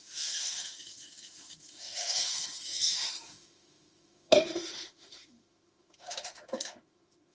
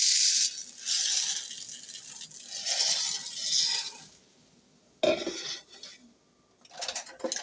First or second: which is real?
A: second